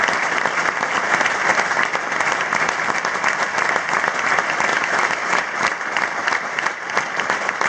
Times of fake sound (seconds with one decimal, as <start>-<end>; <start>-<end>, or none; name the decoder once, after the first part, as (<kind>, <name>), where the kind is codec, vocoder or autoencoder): 4.7-5.4 (autoencoder, DAC-VAE)